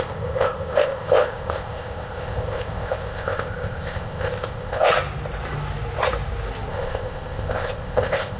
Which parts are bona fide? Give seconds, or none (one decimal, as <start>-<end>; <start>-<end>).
4.9-6.7